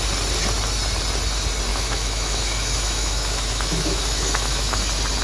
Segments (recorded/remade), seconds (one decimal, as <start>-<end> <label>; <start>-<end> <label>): 0.0-1.7 recorded; 1.7-4.8 remade; 4.8-5.2 recorded